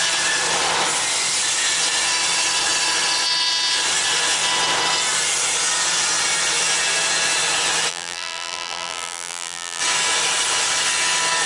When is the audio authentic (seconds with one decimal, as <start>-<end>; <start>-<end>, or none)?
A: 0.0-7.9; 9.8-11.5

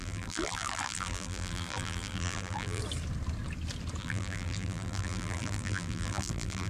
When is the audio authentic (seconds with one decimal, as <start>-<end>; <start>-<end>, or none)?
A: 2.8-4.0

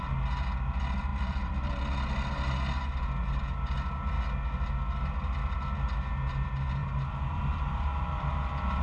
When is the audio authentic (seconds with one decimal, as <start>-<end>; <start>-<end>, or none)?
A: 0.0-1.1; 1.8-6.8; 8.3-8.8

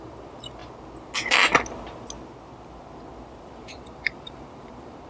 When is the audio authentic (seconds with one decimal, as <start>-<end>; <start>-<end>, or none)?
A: 0.6-3.4

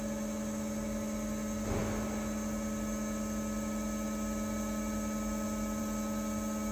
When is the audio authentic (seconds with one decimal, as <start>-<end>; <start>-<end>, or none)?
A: 0.0-6.7

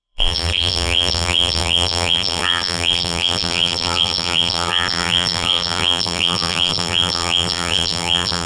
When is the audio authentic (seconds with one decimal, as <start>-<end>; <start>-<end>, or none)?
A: none

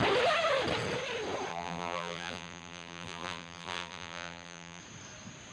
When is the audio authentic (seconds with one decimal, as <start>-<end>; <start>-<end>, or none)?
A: 0.0-1.5; 4.8-5.5